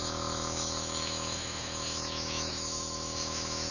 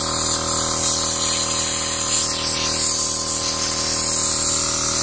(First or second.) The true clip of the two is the second